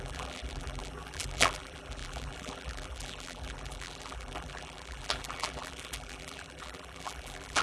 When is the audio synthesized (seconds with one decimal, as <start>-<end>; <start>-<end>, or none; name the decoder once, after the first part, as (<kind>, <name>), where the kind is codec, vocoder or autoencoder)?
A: 0.0-7.6 (vocoder, BigVGAN v2)